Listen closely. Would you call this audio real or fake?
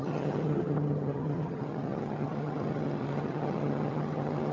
fake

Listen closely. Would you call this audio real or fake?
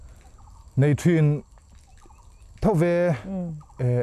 real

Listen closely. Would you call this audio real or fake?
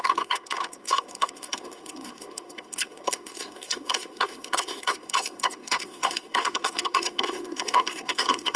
fake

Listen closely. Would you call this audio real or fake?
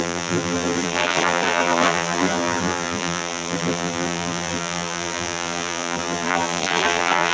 fake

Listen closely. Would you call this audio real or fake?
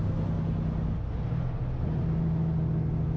real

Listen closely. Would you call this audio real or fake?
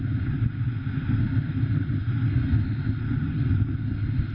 real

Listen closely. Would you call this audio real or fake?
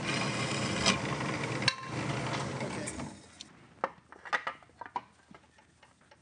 real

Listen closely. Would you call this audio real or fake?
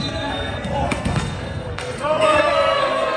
fake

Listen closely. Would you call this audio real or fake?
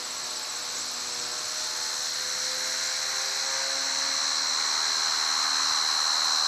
real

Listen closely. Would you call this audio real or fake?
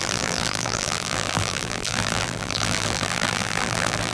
fake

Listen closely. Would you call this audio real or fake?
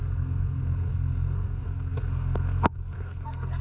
fake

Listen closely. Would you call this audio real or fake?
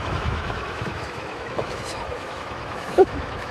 fake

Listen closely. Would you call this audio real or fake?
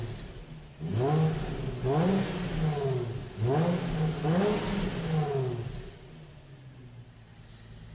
real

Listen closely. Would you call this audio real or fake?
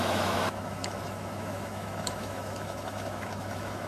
fake